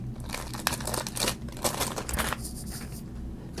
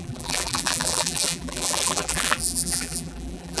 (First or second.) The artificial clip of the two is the second